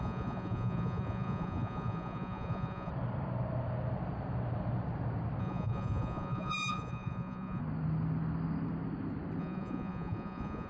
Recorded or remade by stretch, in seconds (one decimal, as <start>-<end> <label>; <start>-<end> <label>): 0.0-2.9 remade; 2.9-5.4 recorded; 5.4-7.6 remade; 7.6-9.4 recorded; 9.4-10.7 remade